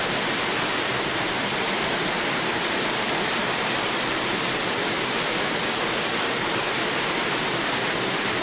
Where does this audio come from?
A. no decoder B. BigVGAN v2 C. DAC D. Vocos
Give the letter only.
B